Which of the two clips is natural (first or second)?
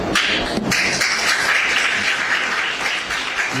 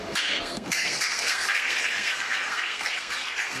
first